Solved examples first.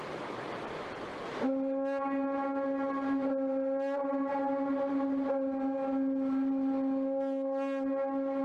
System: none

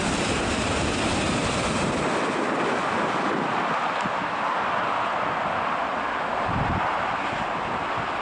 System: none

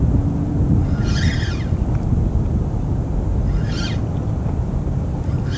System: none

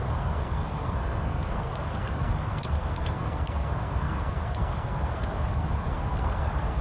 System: codec, SNAC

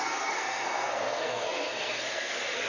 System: codec, SNAC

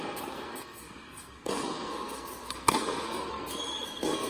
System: codec, SNAC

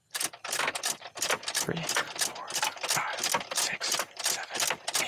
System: none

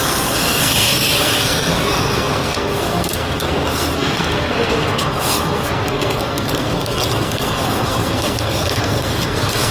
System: codec, SNAC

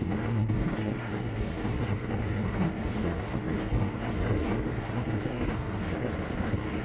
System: codec, SNAC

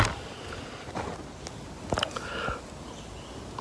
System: none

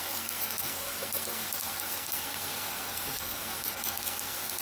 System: codec, SNAC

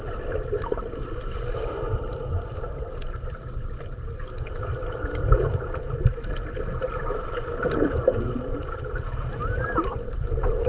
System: none